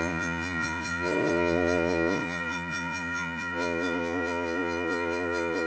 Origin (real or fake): fake